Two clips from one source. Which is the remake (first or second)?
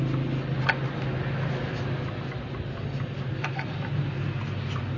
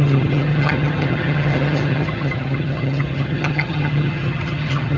second